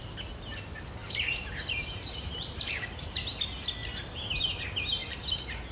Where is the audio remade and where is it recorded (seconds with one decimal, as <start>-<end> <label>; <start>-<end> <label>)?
0.0-1.0 recorded; 1.0-3.4 remade; 3.4-5.0 recorded; 5.0-5.7 remade

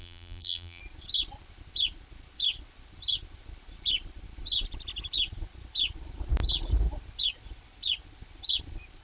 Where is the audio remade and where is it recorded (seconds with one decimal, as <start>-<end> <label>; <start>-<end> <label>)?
0.0-0.8 remade; 0.8-9.0 recorded

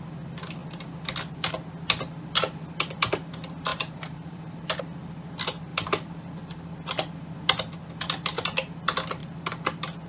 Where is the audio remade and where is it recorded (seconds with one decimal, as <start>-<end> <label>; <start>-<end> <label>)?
0.0-3.7 recorded; 3.7-4.8 remade; 4.8-5.7 recorded; 5.7-6.3 remade; 6.3-10.1 recorded